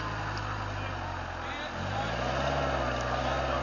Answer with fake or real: real